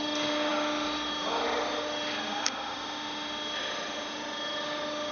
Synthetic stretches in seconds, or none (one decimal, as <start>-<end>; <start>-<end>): none